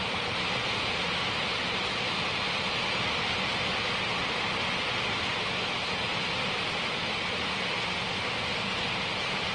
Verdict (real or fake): real